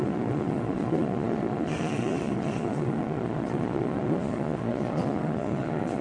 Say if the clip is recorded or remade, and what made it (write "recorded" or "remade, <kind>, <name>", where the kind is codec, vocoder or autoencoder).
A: remade, vocoder, Vocos